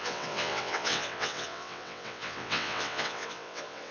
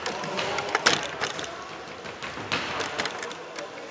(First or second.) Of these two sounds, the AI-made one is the first